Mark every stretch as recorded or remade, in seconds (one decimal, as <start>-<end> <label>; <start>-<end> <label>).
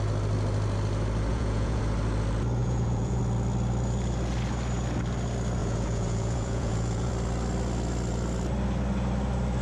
0.0-1.3 recorded; 1.3-1.8 remade; 1.8-2.6 recorded; 2.6-3.2 remade; 3.2-5.6 recorded; 5.6-7.1 remade; 7.1-9.6 recorded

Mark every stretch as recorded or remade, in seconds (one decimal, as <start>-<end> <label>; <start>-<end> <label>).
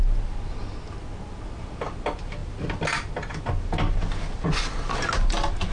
0.0-5.7 recorded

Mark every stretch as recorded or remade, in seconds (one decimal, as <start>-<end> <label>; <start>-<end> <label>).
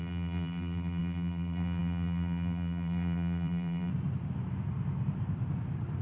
0.0-3.9 remade; 3.9-6.0 recorded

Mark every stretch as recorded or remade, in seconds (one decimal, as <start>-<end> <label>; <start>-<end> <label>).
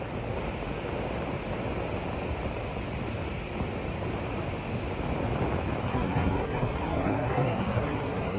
0.0-5.8 recorded; 5.8-8.4 remade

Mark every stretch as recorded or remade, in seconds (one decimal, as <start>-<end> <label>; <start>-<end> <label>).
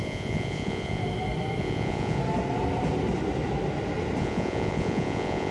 0.0-1.0 remade; 1.0-1.6 recorded; 1.6-2.2 remade; 2.2-4.2 recorded; 4.2-5.5 remade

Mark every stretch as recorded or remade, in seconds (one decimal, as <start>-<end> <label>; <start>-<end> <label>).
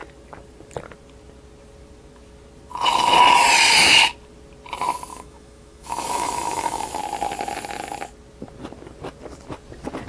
0.0-5.1 recorded; 5.1-7.0 remade; 7.0-10.1 recorded